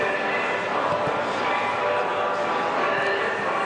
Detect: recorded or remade recorded